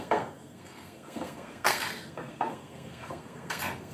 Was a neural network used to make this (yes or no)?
yes